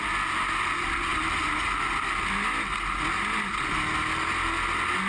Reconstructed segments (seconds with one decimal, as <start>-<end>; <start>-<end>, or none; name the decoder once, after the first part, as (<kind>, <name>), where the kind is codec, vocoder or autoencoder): none